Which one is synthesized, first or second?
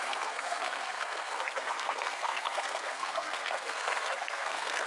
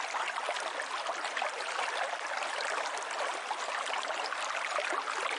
first